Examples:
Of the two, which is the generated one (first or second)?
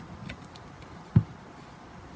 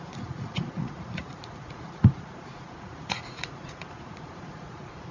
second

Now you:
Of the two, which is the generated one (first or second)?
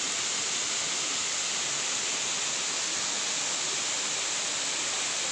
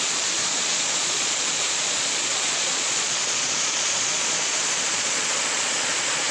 second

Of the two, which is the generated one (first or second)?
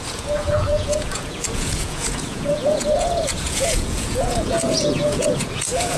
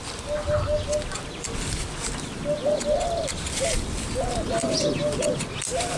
first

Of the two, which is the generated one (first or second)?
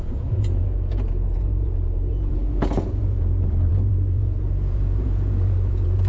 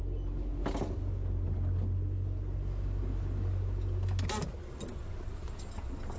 first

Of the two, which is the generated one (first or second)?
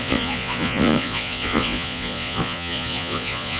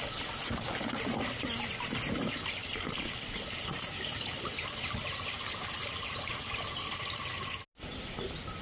first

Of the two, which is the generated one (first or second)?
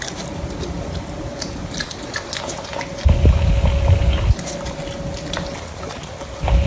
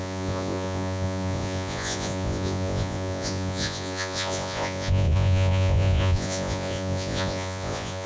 second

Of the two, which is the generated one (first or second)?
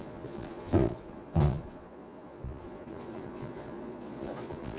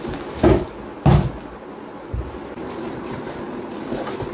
first